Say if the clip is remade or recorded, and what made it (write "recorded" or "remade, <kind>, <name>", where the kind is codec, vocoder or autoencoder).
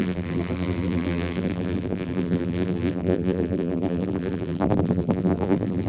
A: remade, vocoder, BigVGAN v2